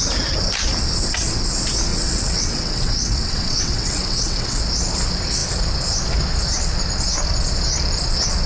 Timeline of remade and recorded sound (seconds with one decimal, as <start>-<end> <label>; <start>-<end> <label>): 0.0-1.9 recorded; 1.9-4.6 remade; 4.6-8.5 recorded